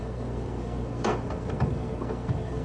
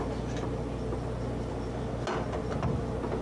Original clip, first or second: second